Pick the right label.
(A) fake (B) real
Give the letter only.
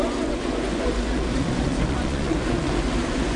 A